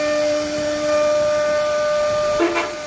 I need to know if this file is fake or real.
real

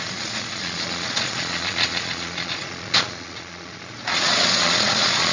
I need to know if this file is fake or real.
fake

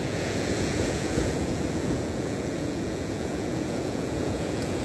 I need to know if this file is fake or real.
fake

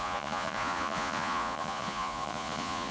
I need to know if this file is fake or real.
fake